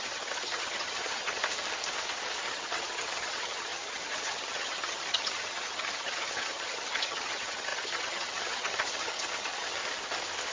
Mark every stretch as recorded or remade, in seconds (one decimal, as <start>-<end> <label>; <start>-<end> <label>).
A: 0.0-1.4 remade; 1.4-2.4 recorded; 2.4-9.8 remade; 9.8-10.5 recorded